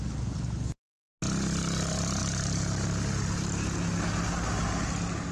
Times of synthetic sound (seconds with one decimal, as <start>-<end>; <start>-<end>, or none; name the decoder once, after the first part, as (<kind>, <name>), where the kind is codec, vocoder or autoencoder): none

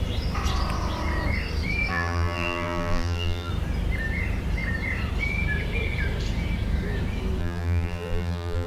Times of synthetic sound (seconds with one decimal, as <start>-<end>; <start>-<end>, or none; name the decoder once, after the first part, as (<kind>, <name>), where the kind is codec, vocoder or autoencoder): 1.9-3.5 (vocoder, BigVGAN v2); 7.4-8.7

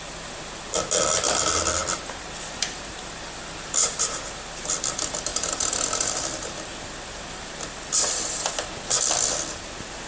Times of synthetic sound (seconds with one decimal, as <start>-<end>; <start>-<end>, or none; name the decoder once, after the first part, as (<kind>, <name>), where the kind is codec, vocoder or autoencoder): 0.0-1.8 (vocoder, BigVGAN v2); 2.6-10.1

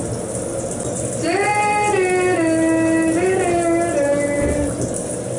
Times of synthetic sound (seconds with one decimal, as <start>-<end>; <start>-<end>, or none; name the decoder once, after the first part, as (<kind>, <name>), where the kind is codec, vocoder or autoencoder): none

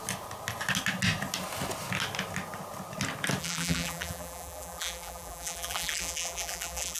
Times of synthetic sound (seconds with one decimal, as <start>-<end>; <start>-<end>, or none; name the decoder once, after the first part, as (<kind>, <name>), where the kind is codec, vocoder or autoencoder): 3.4-7.0 (vocoder, BigVGAN v2)